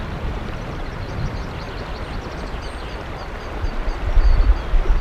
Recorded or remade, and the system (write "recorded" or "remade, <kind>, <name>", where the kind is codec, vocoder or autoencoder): remade, vocoder, BigVGAN v2